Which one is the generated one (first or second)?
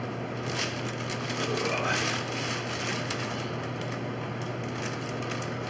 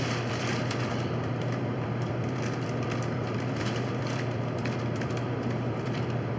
second